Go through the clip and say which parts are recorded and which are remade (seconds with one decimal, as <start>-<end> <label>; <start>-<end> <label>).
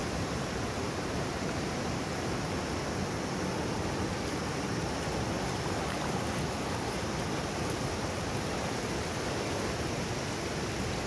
0.0-2.1 remade; 2.1-11.1 recorded